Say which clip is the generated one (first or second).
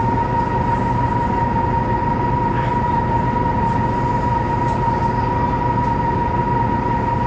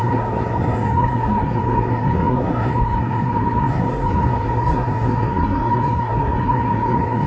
second